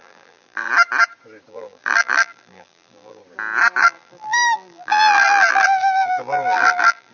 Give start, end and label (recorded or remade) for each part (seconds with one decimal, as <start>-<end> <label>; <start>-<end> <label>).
0.0-0.7 remade; 0.7-1.5 recorded; 1.5-3.2 remade; 3.2-3.8 recorded; 3.8-7.1 remade